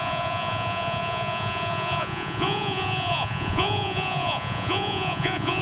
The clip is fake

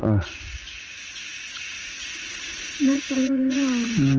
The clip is fake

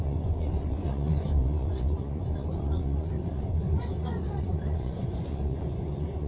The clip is fake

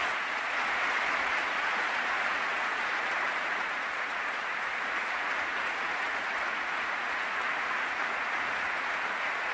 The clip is fake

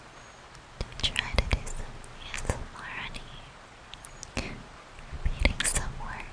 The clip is real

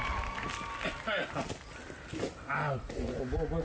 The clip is real